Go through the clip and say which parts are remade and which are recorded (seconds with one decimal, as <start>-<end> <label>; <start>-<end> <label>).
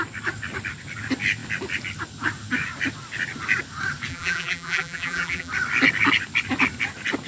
0.0-4.1 recorded; 4.1-5.5 remade; 5.5-7.3 recorded